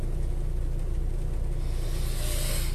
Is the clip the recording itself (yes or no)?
yes